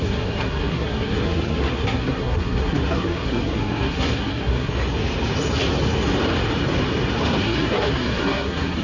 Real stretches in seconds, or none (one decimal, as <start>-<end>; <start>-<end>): 4.7-7.4